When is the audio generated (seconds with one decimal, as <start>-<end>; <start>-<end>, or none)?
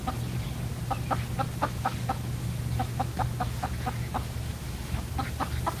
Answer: 1.6-5.1